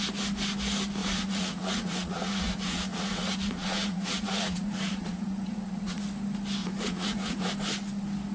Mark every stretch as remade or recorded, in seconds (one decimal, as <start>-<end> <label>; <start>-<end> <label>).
0.0-1.0 recorded; 1.0-6.0 remade; 6.0-6.6 recorded; 6.6-7.5 remade; 7.5-8.3 recorded